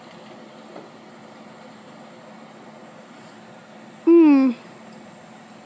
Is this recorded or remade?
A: recorded